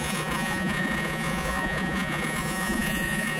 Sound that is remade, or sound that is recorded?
remade